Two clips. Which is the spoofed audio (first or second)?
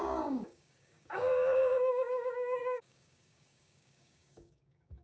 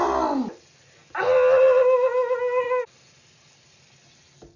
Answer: first